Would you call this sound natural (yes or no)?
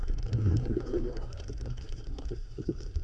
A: no